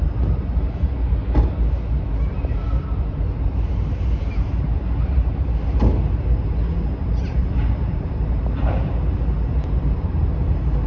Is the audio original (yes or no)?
yes